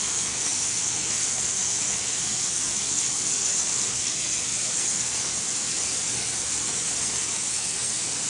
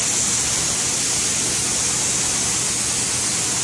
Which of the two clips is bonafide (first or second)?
second